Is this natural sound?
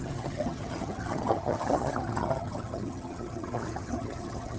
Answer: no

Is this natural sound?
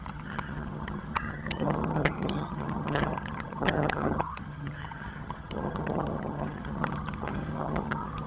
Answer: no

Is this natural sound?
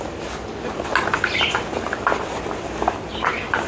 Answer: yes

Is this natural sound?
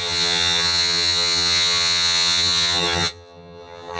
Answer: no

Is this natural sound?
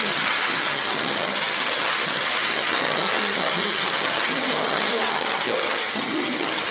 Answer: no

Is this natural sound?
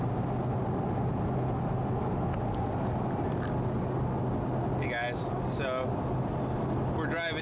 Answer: yes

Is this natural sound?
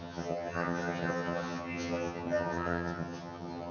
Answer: no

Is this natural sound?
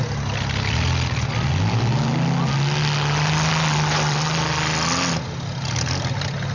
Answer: yes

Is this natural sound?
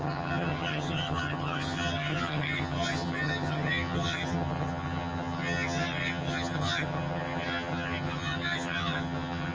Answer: no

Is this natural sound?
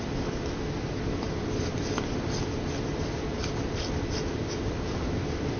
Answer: yes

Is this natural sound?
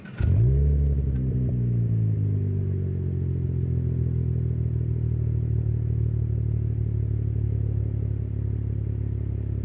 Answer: yes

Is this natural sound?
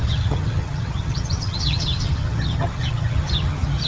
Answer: no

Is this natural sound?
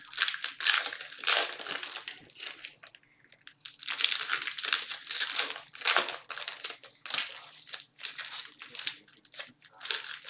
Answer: yes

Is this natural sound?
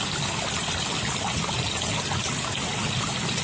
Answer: yes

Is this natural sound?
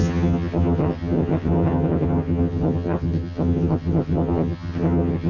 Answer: no